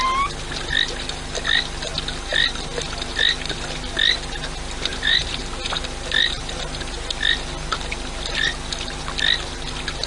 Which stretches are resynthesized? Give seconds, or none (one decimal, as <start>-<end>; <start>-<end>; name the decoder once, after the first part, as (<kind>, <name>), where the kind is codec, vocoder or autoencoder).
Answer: 4.9-5.4 (vocoder, BigVGAN v2)